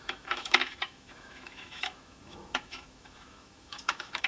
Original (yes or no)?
no